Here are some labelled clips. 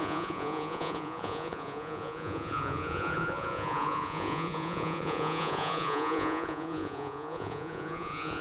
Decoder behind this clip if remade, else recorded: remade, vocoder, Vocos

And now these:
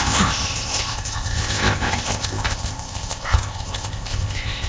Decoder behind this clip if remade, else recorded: remade, codec, ZipCodec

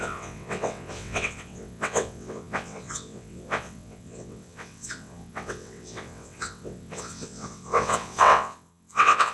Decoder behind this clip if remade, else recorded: remade, vocoder, WaveNeXt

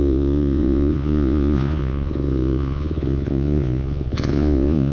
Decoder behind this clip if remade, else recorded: remade, vocoder, Vocos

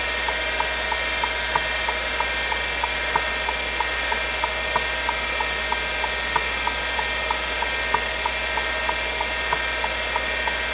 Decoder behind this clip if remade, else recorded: recorded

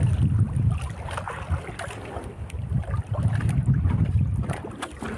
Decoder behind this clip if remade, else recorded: recorded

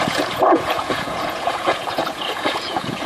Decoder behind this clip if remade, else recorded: remade, vocoder, Vocos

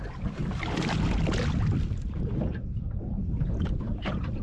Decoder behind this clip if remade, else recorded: remade, vocoder, BigVGAN v2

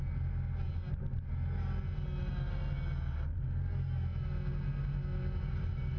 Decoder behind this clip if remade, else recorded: recorded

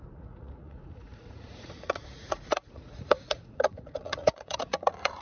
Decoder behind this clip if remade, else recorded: remade, vocoder, Vocos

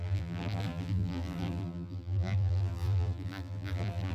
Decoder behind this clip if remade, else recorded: remade, vocoder, BigVGAN v2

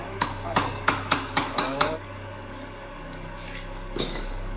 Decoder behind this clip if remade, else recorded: remade, codec, DAC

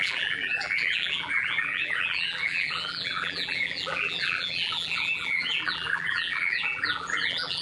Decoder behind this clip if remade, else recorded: remade, vocoder, BigVGAN v2